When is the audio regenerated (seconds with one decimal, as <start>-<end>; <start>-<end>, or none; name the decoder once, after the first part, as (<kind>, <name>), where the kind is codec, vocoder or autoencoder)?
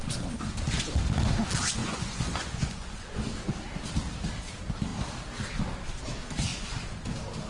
1.8-3.3 (vocoder, Vocos); 6.5-7.1